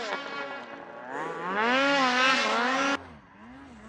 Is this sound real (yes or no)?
yes